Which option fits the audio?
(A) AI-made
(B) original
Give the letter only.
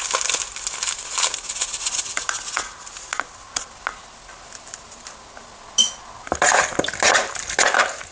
B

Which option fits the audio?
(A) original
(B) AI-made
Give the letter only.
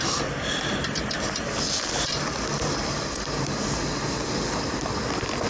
A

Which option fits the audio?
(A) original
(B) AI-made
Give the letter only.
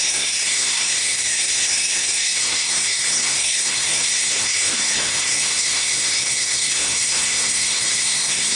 B